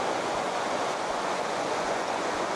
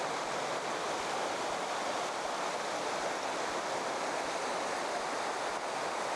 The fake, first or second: first